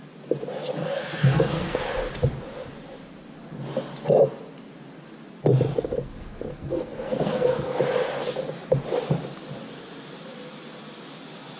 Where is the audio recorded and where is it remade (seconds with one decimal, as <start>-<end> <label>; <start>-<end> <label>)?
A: 0.0-0.8 recorded; 0.8-1.8 remade; 1.8-5.7 recorded; 5.7-7.8 remade; 7.8-11.6 recorded